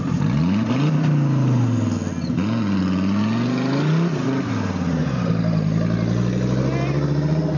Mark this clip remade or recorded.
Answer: recorded